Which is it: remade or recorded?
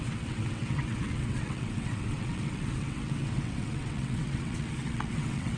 remade